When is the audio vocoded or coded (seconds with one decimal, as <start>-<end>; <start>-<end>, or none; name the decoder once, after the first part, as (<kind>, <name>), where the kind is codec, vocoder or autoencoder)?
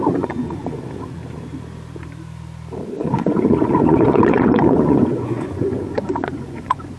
0.0-1.2 (vocoder, Vocos); 3.0-7.0